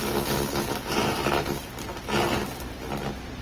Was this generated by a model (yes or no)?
no